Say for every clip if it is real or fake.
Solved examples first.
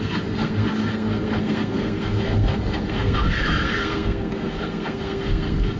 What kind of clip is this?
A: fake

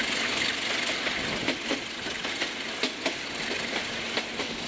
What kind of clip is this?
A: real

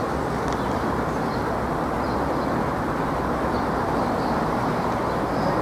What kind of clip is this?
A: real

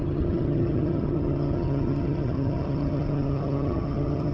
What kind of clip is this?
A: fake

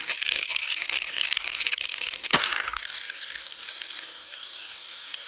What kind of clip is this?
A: fake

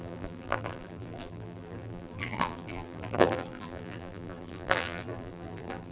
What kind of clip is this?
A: fake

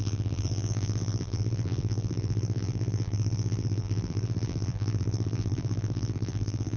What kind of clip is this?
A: fake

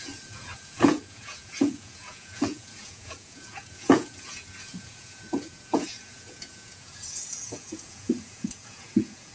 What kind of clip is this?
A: fake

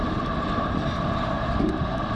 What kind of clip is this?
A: real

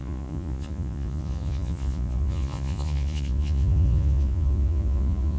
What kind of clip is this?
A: fake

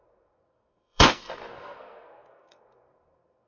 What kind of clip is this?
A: fake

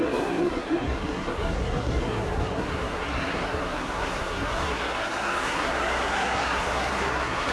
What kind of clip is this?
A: fake